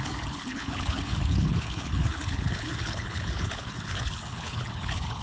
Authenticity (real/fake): fake